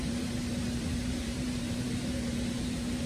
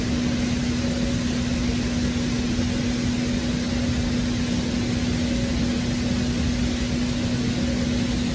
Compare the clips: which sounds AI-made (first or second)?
first